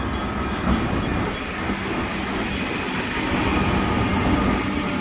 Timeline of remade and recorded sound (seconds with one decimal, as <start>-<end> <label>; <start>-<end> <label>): 0.0-5.0 recorded